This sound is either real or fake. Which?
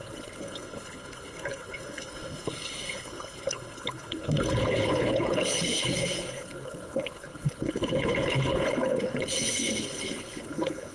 fake